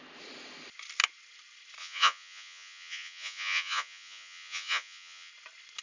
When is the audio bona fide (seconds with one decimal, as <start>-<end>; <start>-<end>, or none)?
0.0-1.8; 5.3-5.8